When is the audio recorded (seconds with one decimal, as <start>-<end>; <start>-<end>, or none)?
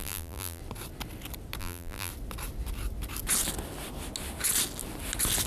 0.6-1.6; 2.1-5.5